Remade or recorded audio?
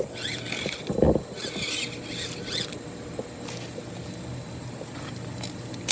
recorded